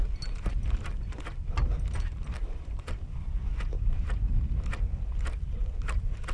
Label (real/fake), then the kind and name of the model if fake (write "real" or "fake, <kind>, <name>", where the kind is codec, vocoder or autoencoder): real